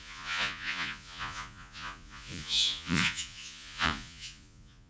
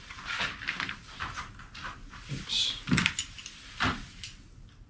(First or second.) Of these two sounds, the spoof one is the first